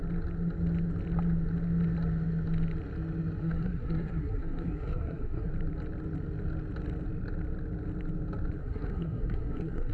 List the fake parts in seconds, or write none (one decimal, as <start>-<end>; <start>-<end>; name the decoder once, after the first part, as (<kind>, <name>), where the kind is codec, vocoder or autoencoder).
3.4-5.5 (codec, SNAC); 8.6-9.9